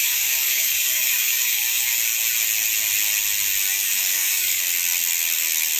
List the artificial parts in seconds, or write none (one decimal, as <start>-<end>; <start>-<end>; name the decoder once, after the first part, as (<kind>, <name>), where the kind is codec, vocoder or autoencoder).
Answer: 0.0-1.9 (codec, DAC); 3.7-4.6